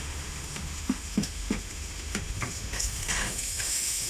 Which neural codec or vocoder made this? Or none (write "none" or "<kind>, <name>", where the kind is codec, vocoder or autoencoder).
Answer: autoencoder, DAC-VAE